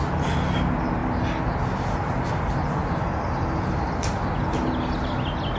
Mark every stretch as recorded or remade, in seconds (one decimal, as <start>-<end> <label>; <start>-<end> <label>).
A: 0.0-5.6 recorded